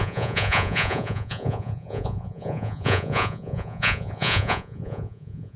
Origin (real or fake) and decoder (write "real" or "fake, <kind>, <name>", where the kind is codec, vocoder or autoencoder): fake, vocoder, Vocos